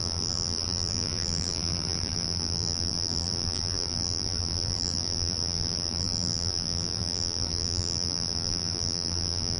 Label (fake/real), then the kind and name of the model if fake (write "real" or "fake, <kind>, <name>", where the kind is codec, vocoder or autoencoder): fake, vocoder, BigVGAN v2